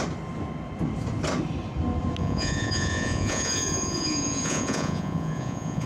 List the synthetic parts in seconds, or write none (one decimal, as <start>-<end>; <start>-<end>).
2.2-5.9

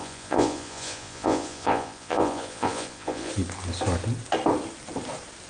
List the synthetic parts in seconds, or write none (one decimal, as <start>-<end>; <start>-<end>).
0.0-3.3

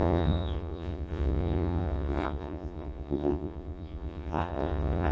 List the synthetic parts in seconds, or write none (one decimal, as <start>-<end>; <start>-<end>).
0.0-5.1

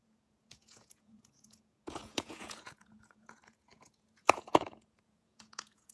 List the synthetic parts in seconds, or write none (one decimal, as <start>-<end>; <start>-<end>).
0.0-5.9

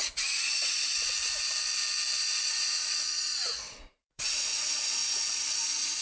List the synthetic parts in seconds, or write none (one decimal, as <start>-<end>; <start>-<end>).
0.0-0.9; 2.3-5.0; 5.5-6.0

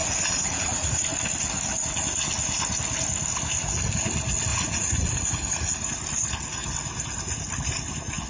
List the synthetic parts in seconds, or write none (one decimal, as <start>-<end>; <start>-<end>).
0.0-1.0; 4.5-5.6

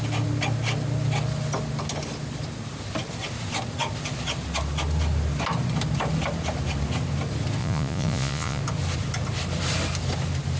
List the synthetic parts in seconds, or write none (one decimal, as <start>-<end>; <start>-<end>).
7.6-8.6